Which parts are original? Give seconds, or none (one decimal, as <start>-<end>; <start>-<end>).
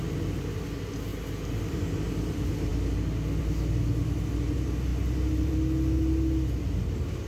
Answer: 0.0-7.3